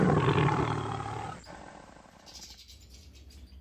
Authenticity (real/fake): real